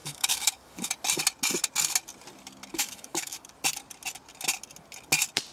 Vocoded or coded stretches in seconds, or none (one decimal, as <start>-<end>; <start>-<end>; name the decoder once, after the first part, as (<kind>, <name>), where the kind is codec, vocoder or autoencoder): 0.0-0.9 (codec, DAC); 2.7-3.5